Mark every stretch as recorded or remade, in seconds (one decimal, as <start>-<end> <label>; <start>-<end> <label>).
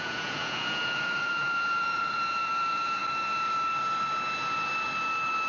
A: 0.0-3.0 remade; 3.0-5.5 recorded